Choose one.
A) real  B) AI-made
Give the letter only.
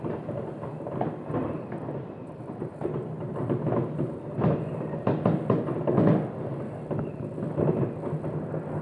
A